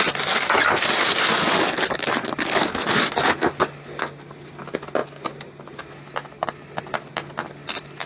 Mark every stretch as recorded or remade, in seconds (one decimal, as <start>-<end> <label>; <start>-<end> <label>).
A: 0.0-8.1 recorded